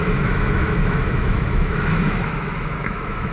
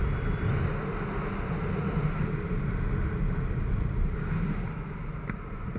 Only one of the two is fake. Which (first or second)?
first